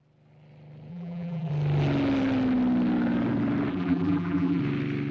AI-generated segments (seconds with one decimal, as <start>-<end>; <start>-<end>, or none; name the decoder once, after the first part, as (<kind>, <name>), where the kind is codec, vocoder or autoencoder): 0.9-1.5 (vocoder, BigVGAN v2); 3.7-4.6